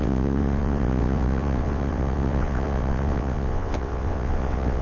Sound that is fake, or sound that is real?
fake